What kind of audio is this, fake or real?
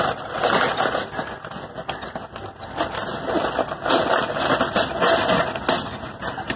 real